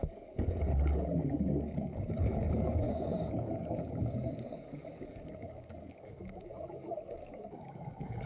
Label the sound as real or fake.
fake